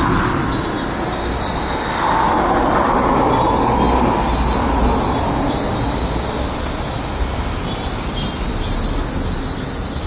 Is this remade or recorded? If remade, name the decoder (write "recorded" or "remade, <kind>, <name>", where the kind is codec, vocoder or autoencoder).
recorded